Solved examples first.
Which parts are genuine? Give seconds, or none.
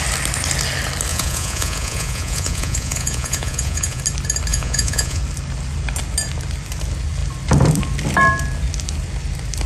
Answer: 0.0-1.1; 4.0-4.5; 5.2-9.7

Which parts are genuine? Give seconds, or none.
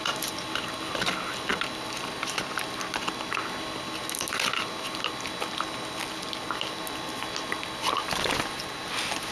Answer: 0.0-9.3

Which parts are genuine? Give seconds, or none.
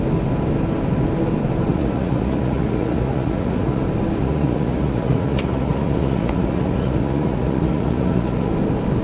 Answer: 0.0-1.7; 3.8-4.2; 8.5-9.0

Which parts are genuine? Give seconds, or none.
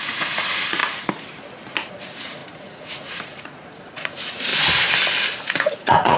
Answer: 0.8-1.9; 4.5-5.4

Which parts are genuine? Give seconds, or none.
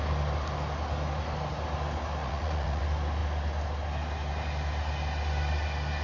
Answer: 0.0-2.2; 2.8-6.0